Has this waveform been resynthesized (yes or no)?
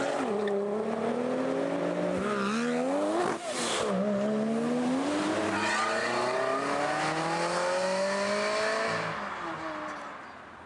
no